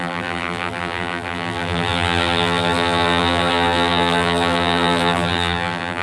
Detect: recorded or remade remade